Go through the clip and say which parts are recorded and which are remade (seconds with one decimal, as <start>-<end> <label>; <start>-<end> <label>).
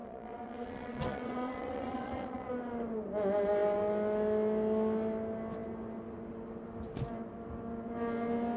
0.0-2.5 remade; 2.5-8.6 recorded